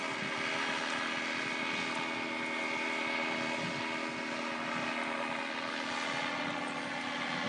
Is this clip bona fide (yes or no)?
yes